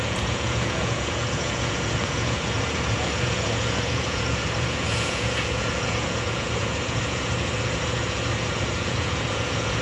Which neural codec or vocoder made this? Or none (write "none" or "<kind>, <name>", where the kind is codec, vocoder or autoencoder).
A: vocoder, Vocos